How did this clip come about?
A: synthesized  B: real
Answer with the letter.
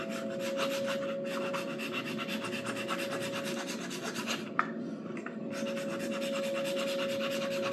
B